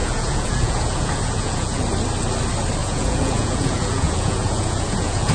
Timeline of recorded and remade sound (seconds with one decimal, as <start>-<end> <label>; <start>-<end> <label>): 0.0-1.8 remade; 1.8-2.8 recorded; 2.8-5.3 remade